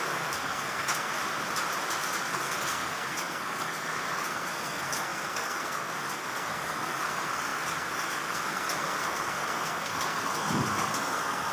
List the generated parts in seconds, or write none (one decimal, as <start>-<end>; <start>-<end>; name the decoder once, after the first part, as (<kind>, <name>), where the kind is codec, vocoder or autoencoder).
0.0-1.2 (codec, SNAC); 1.9-11.5